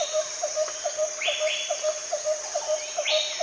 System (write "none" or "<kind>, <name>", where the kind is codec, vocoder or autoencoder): none